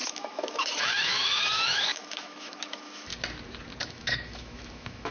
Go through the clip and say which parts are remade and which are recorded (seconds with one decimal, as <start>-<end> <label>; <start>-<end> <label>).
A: 0.0-3.1 remade; 3.1-3.9 recorded; 3.9-5.1 remade